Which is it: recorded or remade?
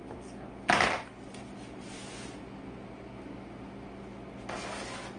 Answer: recorded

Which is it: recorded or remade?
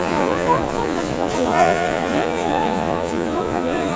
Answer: remade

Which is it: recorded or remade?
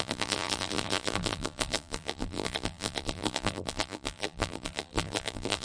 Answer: remade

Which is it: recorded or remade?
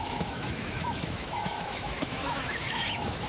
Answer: remade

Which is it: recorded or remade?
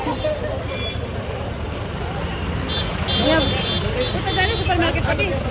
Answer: recorded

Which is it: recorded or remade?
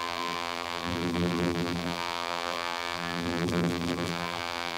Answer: remade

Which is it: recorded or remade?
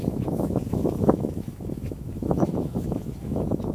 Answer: remade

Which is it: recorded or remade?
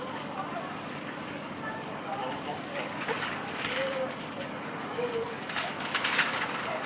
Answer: remade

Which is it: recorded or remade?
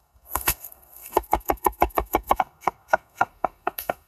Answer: remade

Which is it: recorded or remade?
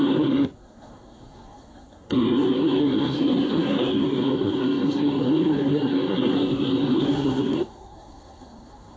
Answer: remade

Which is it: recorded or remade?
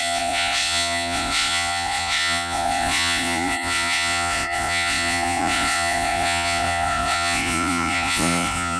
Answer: remade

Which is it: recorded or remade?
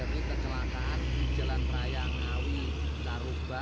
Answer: recorded